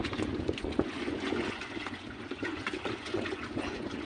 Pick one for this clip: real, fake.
fake